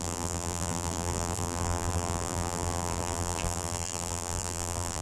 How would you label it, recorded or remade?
remade